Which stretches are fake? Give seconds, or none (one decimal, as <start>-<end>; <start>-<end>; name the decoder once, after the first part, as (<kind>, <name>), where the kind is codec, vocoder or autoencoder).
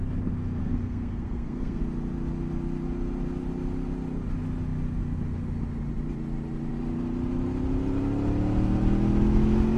0.6-1.8 (codec, SNAC)